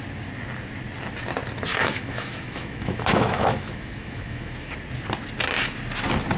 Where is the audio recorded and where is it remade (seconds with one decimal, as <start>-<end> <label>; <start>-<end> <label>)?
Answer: 0.0-1.7 recorded; 1.7-4.7 remade; 4.7-6.4 recorded